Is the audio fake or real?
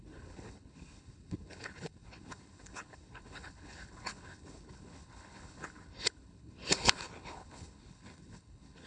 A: fake